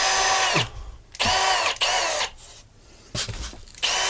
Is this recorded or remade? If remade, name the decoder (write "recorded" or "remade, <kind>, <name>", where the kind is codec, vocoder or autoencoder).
recorded